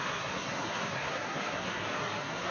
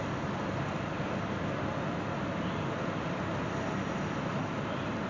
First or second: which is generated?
first